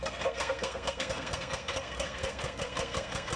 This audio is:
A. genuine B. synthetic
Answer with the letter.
B